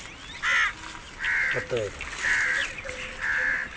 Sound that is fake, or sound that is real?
real